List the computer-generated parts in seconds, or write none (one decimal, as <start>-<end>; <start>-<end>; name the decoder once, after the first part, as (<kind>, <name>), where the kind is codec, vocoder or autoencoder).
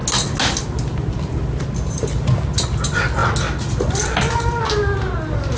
none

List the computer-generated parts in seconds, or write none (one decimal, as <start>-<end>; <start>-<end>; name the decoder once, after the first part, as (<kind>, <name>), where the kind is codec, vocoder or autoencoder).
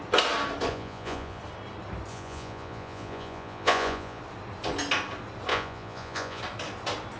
0.7-1.4 (vocoder, Vocos); 2.1-4.2; 5.5-6.4